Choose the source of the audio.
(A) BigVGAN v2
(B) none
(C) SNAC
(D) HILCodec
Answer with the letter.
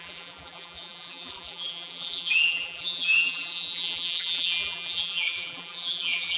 A